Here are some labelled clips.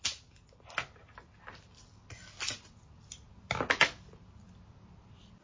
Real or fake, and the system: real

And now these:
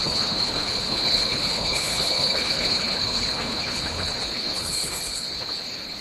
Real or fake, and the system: fake, codec, HILCodec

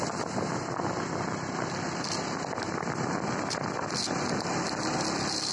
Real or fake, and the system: real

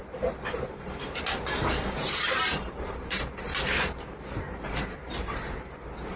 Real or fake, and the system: fake, vocoder, BigVGAN v2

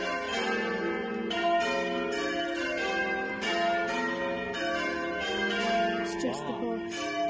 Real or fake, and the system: real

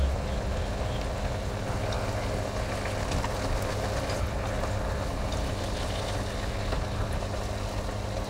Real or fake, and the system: real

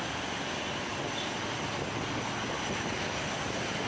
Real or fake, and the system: real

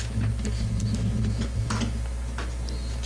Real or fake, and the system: real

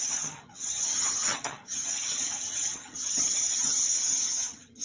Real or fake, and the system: fake, vocoder, HiFi-GAN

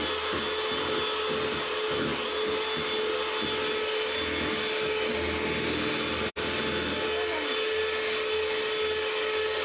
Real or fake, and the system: real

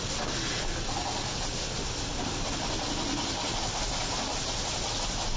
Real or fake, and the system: real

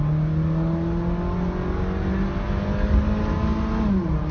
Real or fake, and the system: real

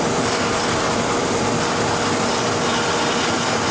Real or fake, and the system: real